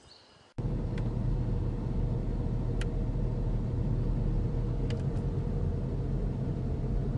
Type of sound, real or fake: real